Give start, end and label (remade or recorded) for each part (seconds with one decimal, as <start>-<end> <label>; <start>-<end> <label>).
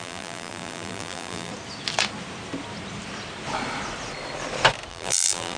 0.0-1.5 remade; 1.5-4.9 recorded; 4.9-5.6 remade